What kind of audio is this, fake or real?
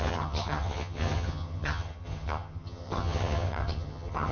fake